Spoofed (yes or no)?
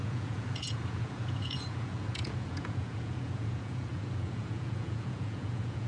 yes